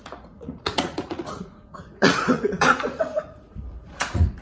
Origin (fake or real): fake